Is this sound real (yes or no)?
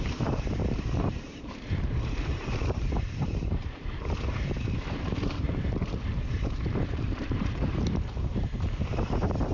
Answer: no